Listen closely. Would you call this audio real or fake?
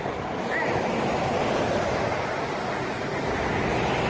real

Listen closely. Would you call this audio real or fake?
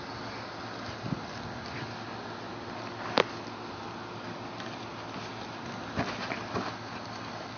real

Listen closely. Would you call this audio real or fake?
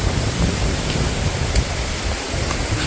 real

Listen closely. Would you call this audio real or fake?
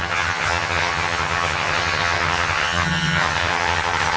fake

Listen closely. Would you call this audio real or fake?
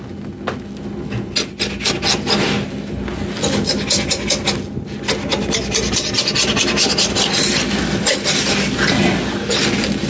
real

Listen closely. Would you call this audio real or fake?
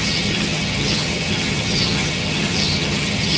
fake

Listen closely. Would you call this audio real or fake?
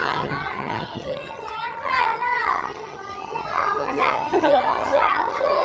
fake